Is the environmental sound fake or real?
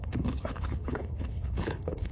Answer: fake